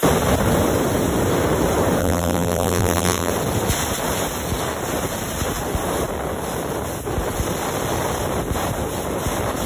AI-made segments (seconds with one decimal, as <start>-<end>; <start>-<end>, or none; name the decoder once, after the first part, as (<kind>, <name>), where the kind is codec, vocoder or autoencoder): 2.0-3.3 (vocoder, BigVGAN v2)